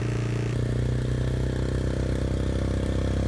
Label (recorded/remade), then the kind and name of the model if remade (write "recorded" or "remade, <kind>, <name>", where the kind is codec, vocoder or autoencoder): recorded